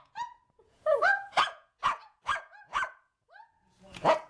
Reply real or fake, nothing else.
fake